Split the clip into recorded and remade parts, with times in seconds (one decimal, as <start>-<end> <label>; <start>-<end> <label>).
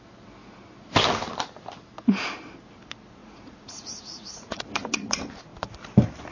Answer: 0.0-3.2 recorded; 3.2-4.6 remade; 4.6-6.3 recorded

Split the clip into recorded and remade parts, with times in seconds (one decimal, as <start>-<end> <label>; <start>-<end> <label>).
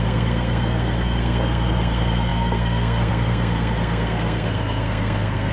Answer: 0.0-5.5 remade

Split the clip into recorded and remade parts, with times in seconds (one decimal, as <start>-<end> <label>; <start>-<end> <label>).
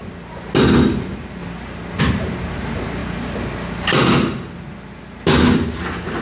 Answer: 0.0-0.9 recorded; 0.9-1.4 remade; 1.4-2.0 recorded; 2.0-3.0 remade; 3.0-5.5 recorded; 5.5-6.2 remade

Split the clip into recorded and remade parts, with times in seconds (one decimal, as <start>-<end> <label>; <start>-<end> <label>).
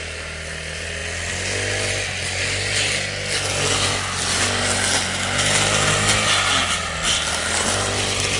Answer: 0.0-8.4 recorded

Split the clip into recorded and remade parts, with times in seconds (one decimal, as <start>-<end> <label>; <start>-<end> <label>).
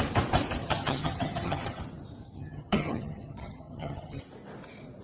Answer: 0.0-0.6 recorded; 0.6-1.8 remade; 1.8-2.2 recorded; 2.2-4.2 remade; 4.2-5.0 recorded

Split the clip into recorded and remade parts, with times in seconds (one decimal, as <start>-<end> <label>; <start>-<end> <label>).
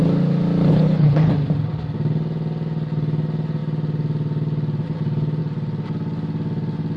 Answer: 0.0-0.7 recorded; 0.7-1.3 remade; 1.3-7.0 recorded